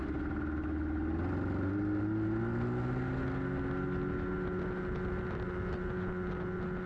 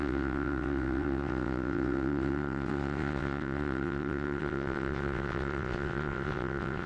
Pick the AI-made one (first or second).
second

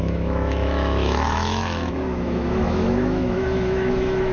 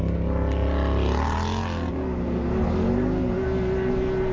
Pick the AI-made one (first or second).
first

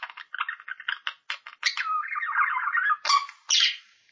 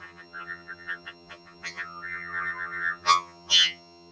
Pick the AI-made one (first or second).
second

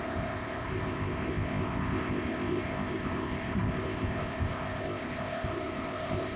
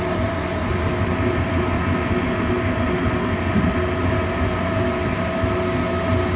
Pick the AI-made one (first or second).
first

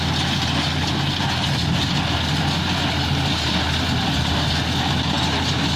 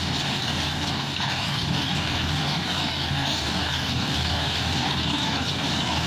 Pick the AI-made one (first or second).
second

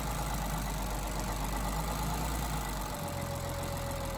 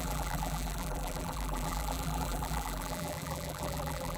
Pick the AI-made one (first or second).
second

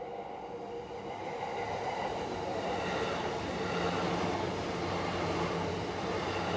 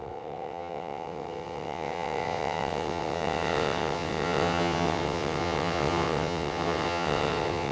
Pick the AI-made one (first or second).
second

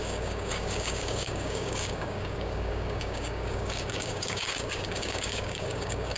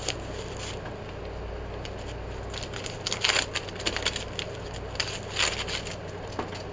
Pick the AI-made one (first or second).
first